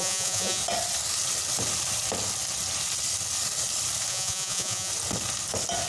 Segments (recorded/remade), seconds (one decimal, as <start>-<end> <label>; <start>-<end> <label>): 0.0-0.6 remade; 0.6-4.1 recorded; 4.1-4.9 remade; 4.9-5.9 recorded